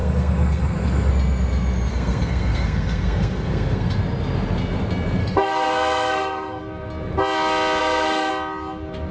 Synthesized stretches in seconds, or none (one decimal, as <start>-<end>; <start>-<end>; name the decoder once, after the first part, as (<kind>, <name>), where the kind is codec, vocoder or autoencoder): 0.0-1.1 (codec, SNAC); 1.9-4.0; 5.2-6.6; 7.8-8.3